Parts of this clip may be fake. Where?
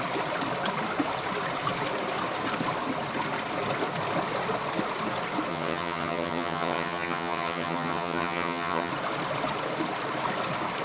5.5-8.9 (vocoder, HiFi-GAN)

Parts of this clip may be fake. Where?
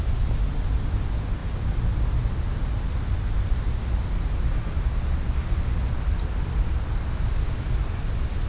none